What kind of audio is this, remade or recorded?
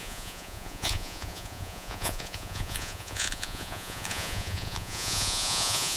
remade